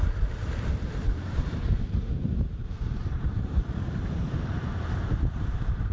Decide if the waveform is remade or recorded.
remade